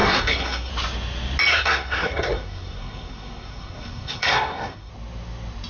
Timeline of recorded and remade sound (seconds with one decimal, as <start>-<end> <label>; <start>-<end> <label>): 0.0-0.7 remade; 0.7-1.5 recorded; 1.5-4.9 remade; 4.9-5.7 recorded

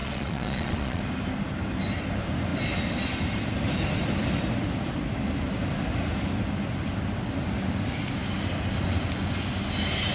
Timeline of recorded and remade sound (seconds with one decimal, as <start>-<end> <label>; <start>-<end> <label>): 0.0-1.0 remade; 1.0-10.1 recorded

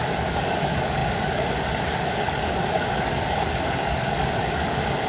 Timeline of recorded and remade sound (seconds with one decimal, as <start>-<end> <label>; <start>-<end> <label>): 0.0-5.1 remade